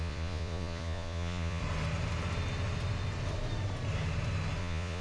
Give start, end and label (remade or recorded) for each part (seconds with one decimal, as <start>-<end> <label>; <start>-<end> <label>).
0.0-1.6 remade; 1.6-4.6 recorded; 4.6-5.0 remade